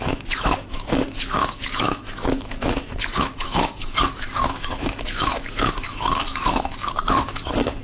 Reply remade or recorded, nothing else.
remade